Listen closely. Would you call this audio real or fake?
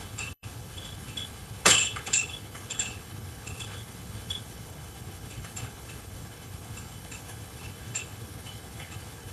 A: fake